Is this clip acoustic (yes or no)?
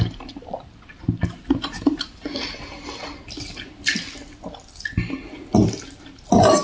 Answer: yes